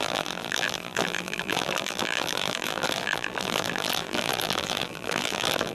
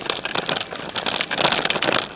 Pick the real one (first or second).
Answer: second